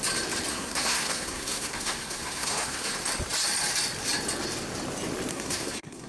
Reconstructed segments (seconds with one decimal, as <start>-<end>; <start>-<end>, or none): 0.5-2.9; 5.3-6.1